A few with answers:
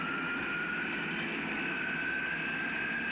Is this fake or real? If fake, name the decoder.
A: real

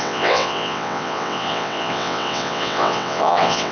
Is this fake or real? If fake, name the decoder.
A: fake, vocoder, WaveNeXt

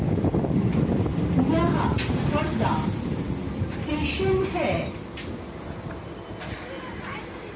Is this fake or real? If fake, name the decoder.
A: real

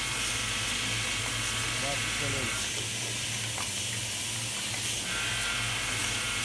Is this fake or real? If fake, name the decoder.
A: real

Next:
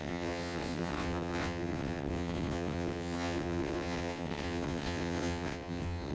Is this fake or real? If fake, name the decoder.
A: fake, vocoder, WaveNeXt